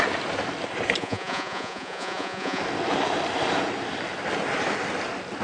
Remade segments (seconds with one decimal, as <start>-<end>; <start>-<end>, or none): 1.0-2.6